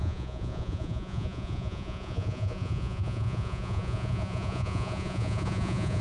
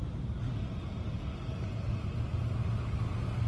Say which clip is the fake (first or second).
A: first